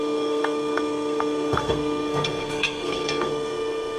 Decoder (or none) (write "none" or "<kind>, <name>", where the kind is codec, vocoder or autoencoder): codec, SNAC